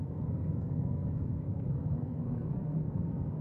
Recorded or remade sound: remade